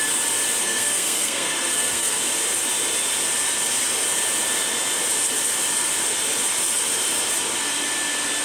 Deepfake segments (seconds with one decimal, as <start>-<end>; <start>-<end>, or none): 0.6-2.2